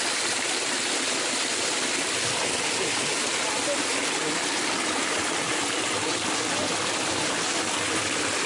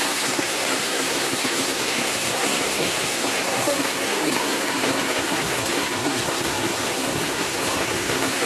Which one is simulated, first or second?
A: second